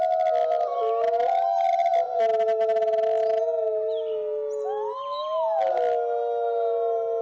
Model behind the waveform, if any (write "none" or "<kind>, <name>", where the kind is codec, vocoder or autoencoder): none